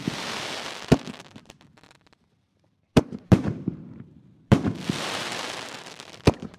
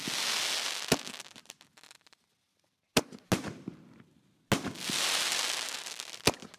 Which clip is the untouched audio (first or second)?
second